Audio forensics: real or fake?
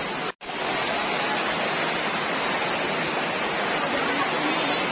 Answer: real